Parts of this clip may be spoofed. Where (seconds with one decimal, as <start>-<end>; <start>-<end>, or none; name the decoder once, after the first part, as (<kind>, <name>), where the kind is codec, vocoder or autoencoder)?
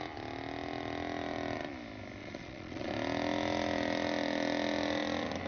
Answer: 2.2-2.9 (vocoder, Vocos)